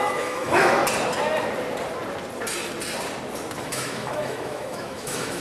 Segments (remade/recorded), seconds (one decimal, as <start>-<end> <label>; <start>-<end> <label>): 0.0-0.8 remade; 0.8-3.6 recorded; 3.6-5.4 remade